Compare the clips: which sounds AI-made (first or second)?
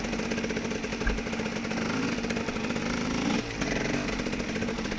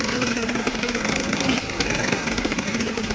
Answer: second